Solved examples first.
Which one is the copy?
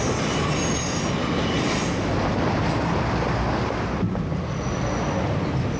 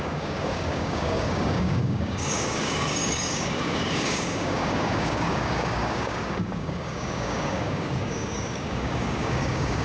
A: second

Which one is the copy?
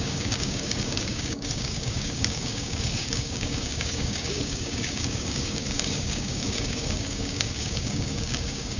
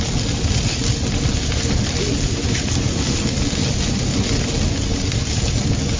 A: first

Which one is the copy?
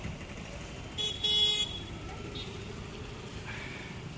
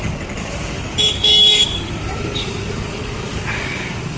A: second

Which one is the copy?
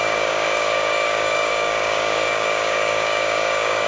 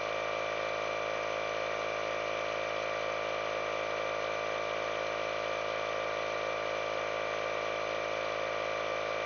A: first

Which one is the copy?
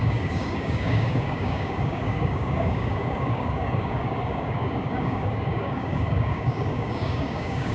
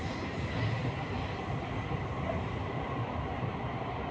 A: first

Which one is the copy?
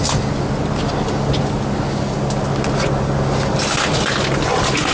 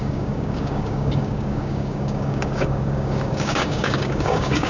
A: second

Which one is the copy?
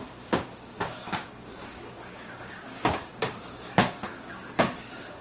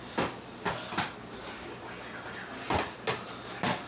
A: first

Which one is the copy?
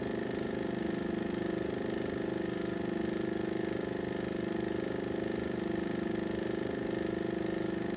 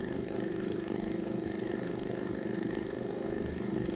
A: second